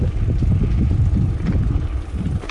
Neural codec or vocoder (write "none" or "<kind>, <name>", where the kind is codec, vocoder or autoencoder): none